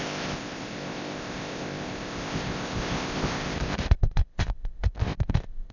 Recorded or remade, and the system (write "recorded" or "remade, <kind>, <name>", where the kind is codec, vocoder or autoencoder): remade, codec, ZipCodec